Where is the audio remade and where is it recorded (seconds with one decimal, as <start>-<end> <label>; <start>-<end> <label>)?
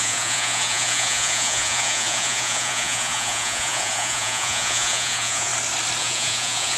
0.0-5.5 remade; 5.5-6.0 recorded; 6.0-6.8 remade